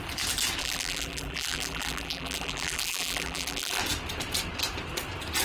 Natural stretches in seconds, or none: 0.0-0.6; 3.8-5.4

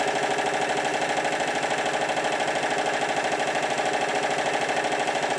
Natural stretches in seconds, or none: 0.0-5.4

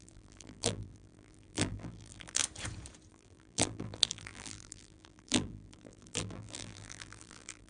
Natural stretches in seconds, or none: 2.4-3.1

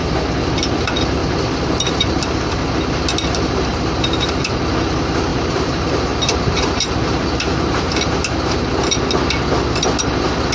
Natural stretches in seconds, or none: 0.0-1.2; 2.7-3.7; 4.6-5.3; 8.7-10.5

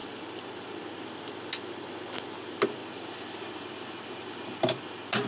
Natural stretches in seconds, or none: 0.8-2.8; 4.8-5.3